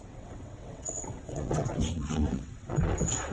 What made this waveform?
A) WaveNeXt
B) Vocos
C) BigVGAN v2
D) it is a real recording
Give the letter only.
A